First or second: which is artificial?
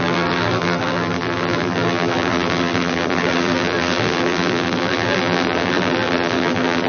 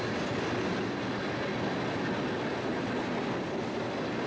first